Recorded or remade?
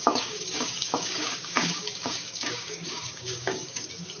remade